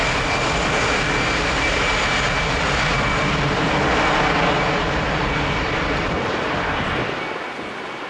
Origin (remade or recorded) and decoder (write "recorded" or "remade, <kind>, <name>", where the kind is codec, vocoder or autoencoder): recorded